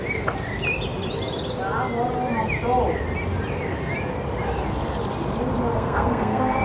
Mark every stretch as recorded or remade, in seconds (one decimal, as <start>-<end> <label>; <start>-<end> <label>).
0.0-5.7 recorded; 5.7-6.6 remade